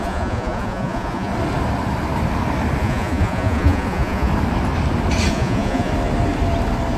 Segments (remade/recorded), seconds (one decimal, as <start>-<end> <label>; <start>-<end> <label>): 0.0-1.3 remade; 1.3-2.8 recorded; 2.8-4.3 remade; 4.3-5.3 recorded; 5.3-5.9 remade; 5.9-7.0 recorded